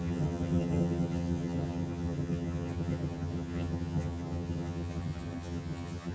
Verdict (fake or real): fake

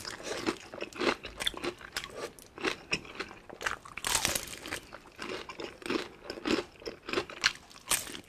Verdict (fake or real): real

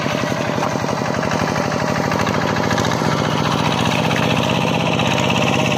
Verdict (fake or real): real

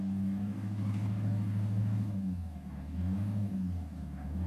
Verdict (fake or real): fake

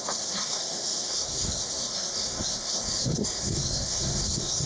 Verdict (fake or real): fake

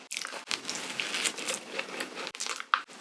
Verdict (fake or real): real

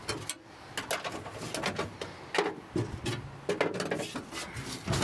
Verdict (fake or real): real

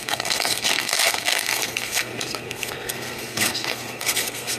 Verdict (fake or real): fake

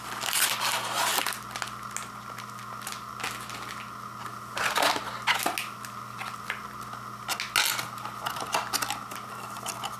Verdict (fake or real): real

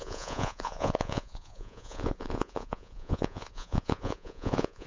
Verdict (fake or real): fake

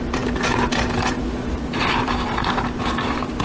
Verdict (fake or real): fake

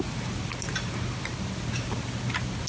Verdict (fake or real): real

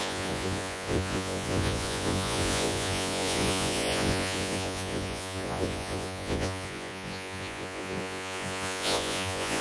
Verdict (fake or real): fake